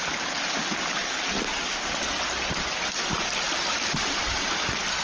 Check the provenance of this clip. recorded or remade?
recorded